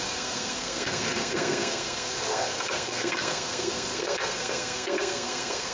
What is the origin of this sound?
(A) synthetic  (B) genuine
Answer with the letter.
A